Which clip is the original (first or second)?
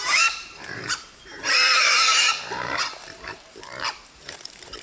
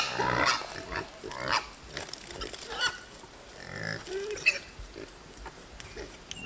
second